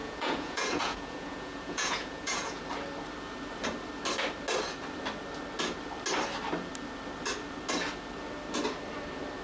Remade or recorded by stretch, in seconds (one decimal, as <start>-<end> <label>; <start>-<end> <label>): 0.0-2.6 remade; 2.6-9.4 recorded